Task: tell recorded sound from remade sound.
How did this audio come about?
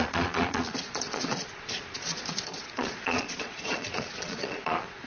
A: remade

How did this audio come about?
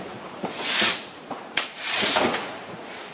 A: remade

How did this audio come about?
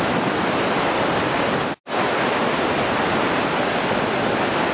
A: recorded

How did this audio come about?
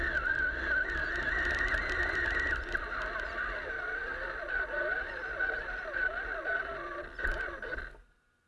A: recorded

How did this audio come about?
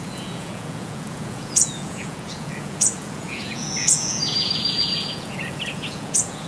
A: remade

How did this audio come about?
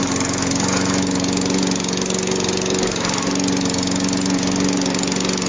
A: recorded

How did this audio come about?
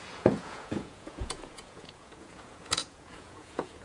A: remade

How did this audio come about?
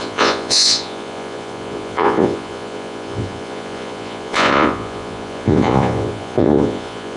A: remade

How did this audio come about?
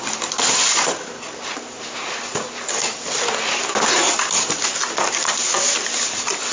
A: recorded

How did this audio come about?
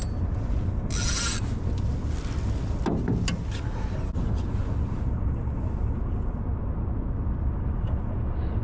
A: recorded